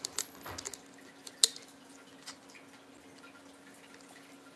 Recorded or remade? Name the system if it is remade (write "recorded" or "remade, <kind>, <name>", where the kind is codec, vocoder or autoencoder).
recorded